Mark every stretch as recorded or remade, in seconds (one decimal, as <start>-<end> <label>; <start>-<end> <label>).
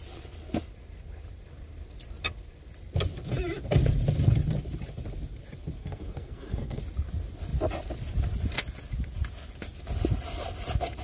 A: 0.0-5.8 recorded; 5.8-6.8 remade; 6.8-11.0 recorded